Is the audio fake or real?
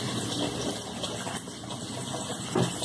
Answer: real